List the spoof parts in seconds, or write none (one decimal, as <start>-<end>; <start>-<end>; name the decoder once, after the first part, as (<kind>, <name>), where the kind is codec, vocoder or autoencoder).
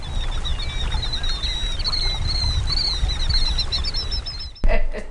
none